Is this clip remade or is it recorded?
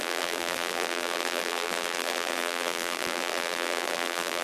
remade